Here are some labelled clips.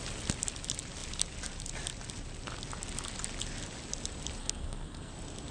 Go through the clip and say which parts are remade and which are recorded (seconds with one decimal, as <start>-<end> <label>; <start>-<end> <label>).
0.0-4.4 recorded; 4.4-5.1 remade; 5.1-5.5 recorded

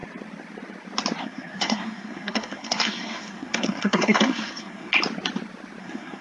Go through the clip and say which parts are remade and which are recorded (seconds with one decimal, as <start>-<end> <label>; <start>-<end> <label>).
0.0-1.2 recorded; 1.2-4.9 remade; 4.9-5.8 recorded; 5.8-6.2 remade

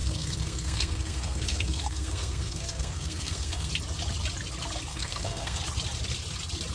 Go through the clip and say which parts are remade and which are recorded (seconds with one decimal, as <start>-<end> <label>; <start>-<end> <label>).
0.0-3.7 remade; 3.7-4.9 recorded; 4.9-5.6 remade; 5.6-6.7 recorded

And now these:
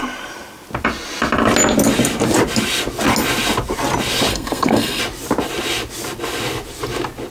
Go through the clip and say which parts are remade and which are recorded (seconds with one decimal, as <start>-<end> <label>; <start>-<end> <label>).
0.0-4.3 recorded; 4.3-5.0 remade; 5.0-7.3 recorded

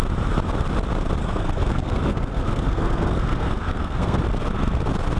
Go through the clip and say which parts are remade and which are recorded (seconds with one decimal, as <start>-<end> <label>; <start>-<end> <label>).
0.0-1.2 recorded; 1.2-4.2 remade; 4.2-5.2 recorded